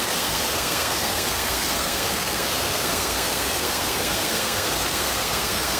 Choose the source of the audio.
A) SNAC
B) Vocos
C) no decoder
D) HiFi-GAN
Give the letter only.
A